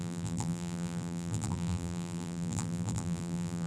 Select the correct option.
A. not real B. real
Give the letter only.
A